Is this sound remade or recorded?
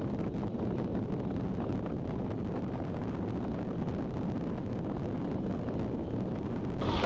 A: recorded